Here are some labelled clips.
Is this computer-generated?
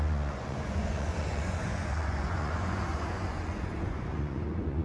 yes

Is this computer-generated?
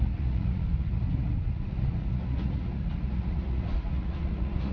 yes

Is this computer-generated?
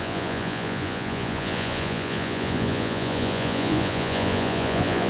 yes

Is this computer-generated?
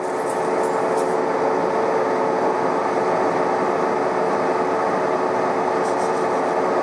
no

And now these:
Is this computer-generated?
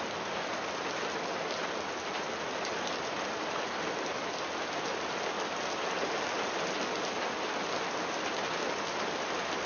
no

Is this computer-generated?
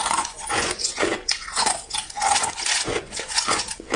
yes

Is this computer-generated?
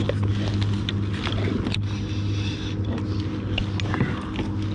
no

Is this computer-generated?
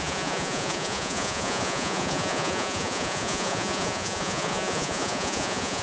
yes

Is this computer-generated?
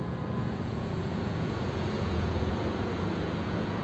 yes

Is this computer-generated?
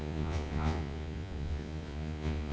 yes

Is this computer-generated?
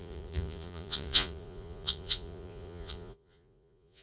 yes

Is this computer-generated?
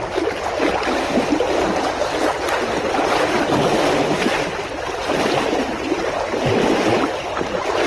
no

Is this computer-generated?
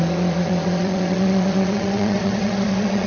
yes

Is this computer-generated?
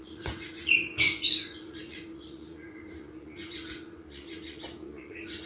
yes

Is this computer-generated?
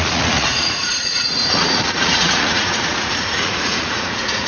yes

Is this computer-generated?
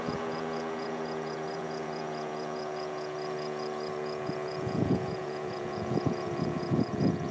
yes